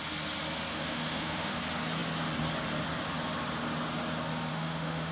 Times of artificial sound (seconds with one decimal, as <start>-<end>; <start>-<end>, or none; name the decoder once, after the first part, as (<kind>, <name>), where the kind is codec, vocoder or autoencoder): 0.7-1.6 (autoencoder, DAC-VAE); 4.5-5.1